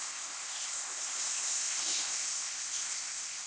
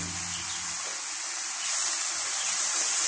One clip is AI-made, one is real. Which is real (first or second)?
second